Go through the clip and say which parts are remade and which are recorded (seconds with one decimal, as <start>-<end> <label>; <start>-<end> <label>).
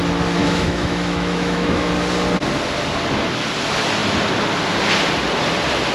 0.0-0.4 recorded; 0.4-1.9 remade; 1.9-5.9 recorded